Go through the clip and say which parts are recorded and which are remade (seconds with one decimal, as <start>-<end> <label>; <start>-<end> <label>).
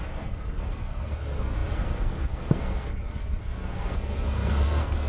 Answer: 0.0-5.1 remade